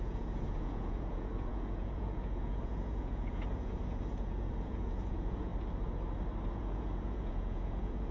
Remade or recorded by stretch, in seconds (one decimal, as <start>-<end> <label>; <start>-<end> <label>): 0.0-5.5 remade; 5.5-6.5 recorded; 6.5-8.1 remade